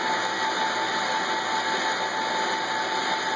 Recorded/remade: recorded